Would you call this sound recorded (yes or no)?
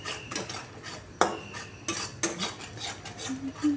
yes